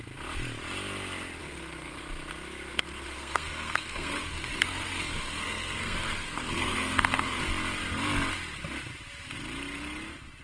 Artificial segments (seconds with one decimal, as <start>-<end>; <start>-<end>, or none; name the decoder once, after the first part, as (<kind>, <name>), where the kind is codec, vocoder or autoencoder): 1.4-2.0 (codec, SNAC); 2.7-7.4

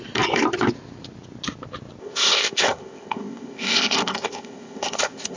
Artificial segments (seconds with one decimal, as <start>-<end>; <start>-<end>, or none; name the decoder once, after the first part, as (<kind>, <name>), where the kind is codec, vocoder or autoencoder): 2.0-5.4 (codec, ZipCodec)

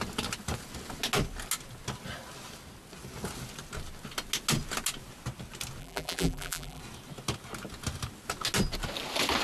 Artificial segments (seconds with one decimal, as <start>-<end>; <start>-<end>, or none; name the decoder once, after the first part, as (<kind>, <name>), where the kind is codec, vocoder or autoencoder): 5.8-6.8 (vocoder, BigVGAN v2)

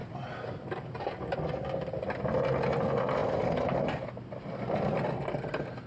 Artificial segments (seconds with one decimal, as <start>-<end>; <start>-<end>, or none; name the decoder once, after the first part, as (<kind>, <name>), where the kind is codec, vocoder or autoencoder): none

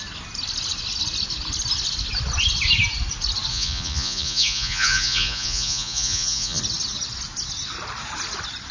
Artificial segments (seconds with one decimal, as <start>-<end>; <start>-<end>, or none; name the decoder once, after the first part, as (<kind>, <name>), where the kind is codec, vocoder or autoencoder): 3.5-6.6 (vocoder, Vocos)